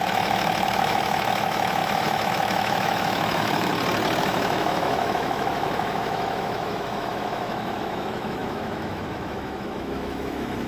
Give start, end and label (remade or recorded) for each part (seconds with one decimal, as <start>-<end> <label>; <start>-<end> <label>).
0.0-3.7 remade; 3.7-4.2 recorded; 4.2-10.7 remade